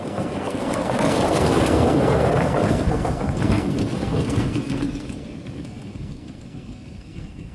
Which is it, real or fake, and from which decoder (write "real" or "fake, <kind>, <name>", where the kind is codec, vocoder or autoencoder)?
fake, codec, SNAC